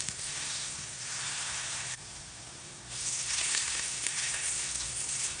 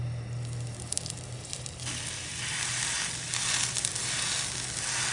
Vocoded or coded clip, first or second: first